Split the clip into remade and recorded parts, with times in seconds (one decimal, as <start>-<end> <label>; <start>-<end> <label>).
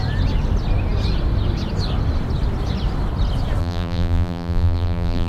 0.0-3.6 recorded; 3.6-5.3 remade